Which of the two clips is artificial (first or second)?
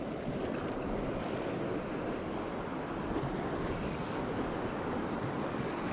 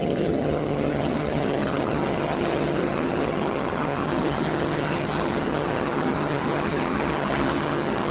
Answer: second